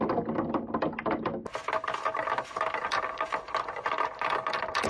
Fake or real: real